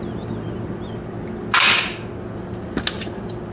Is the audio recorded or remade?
recorded